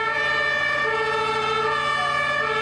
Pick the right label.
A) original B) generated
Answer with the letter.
A